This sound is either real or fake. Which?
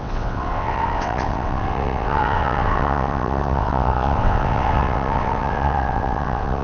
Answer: fake